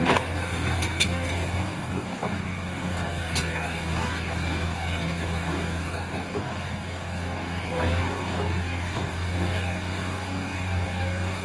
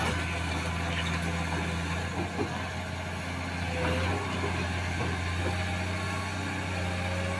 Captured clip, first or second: second